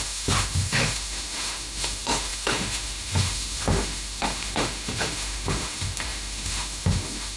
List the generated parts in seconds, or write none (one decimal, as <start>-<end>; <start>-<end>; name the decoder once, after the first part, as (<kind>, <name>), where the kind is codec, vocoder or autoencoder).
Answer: 0.0-7.4 (autoencoder, DAC-VAE)